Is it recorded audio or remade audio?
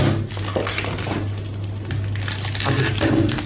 recorded